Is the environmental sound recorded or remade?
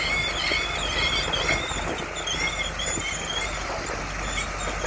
recorded